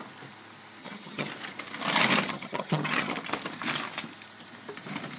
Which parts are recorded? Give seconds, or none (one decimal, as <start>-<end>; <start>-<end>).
0.0-0.8; 1.3-2.3; 3.1-5.2